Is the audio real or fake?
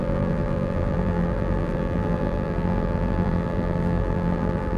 fake